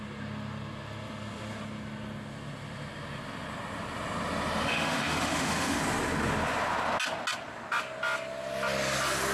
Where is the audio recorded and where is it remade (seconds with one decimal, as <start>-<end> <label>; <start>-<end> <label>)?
0.0-4.7 recorded; 4.7-5.8 remade; 5.8-9.3 recorded